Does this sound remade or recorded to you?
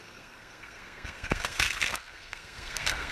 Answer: remade